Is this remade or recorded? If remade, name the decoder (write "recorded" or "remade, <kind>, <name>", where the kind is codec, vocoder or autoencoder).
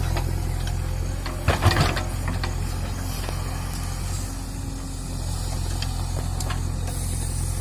recorded